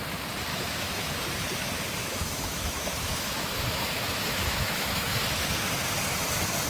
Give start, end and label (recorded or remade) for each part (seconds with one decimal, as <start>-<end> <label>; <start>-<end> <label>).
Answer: 0.0-0.5 recorded; 0.5-1.1 remade; 1.1-2.0 recorded; 2.0-5.1 remade; 5.1-6.7 recorded